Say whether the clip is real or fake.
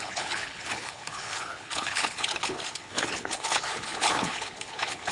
fake